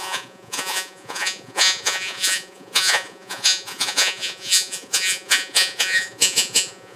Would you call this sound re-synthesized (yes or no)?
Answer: yes